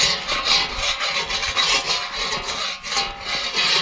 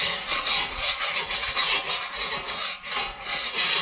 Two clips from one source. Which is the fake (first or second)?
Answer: second